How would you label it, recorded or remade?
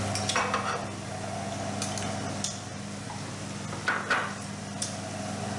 recorded